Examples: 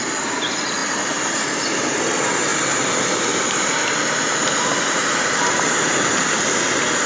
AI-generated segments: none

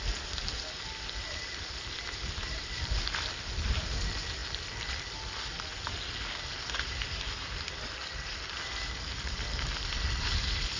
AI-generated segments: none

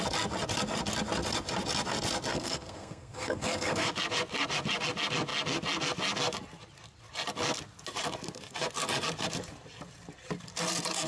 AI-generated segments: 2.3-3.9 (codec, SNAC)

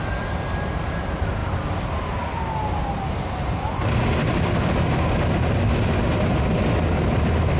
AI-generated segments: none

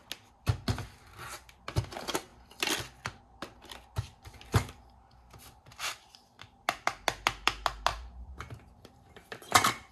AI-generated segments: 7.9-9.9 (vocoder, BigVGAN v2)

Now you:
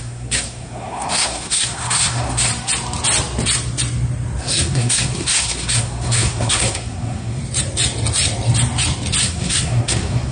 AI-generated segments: 0.0-2.5 (codec, SNAC); 4.4-7.4; 9.2-10.3

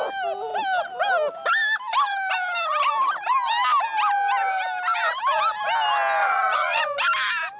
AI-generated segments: 6.2-6.8 (vocoder, Vocos)